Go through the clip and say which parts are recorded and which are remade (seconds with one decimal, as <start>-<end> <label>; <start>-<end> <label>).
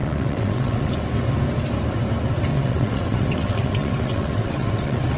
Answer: 0.0-0.9 remade; 0.9-2.5 recorded; 2.5-5.2 remade